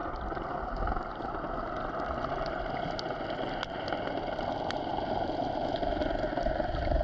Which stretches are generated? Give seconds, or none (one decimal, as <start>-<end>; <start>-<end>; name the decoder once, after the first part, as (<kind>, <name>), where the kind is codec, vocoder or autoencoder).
4.2-7.0 (vocoder, BigVGAN v2)